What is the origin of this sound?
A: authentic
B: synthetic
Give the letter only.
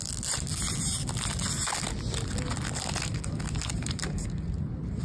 A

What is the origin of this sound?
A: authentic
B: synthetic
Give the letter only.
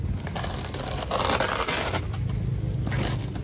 A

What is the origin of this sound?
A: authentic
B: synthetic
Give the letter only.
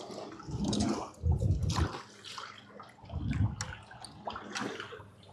A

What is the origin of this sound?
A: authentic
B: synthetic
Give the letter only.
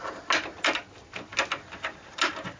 A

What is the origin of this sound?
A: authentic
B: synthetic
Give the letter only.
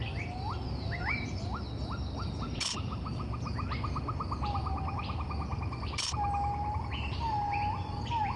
A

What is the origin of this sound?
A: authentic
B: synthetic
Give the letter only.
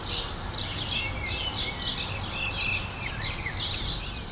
A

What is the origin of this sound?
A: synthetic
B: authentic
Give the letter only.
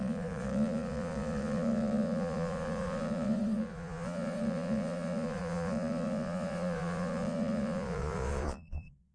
A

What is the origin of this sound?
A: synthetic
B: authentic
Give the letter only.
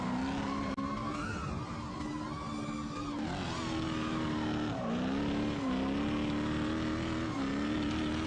B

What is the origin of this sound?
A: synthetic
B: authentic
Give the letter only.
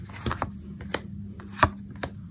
B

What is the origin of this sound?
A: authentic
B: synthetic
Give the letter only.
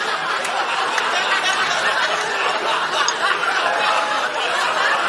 A